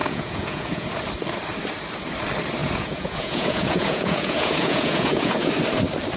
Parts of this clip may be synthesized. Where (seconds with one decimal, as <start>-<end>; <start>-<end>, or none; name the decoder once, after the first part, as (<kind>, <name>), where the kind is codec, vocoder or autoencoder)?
0.0-1.0 (vocoder, Vocos); 2.6-5.5